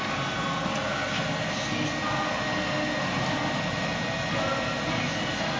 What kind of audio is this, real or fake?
real